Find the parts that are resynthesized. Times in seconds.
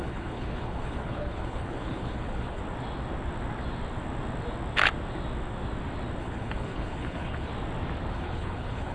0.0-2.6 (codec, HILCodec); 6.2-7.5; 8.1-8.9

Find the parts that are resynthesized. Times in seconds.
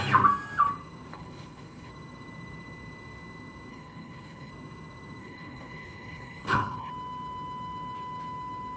1.1-1.9 (codec, HILCodec); 3.7-4.5; 5.2-6.9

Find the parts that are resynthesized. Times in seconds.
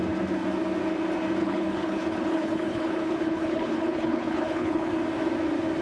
1.4-4.9 (codec, HILCodec)